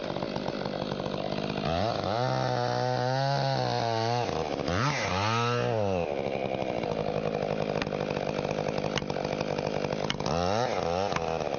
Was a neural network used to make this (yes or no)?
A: no